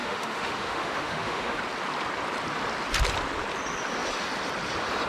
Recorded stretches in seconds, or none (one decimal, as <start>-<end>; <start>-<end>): 1.6-5.1